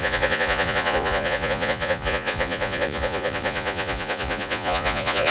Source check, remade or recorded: remade